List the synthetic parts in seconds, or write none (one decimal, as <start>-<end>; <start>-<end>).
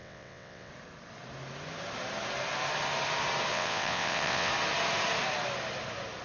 0.0-0.7; 3.5-4.5